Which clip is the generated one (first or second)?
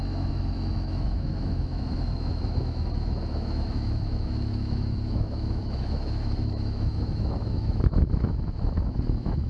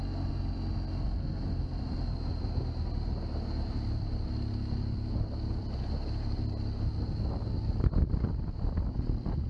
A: first